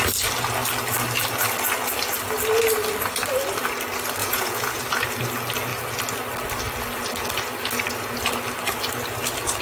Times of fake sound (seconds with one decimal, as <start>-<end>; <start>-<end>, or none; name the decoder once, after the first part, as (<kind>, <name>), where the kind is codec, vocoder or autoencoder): 4.2-4.8 (vocoder, Vocos)